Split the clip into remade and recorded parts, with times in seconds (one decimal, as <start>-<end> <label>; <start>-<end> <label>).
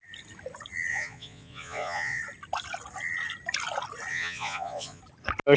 0.0-0.9 recorded; 0.9-2.2 remade; 2.2-4.1 recorded; 4.1-5.0 remade; 5.0-5.6 recorded